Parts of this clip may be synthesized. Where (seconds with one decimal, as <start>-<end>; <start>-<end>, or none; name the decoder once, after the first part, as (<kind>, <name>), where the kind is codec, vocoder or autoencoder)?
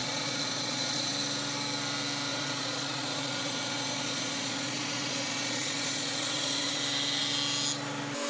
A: 0.0-1.1 (vocoder, Vocos); 2.3-6.8